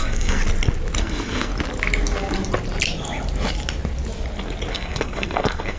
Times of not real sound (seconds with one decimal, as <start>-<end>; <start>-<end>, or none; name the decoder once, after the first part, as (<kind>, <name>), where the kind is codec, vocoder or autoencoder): 0.0-0.4 (codec, SNAC); 1.0-1.5; 4.7-5.8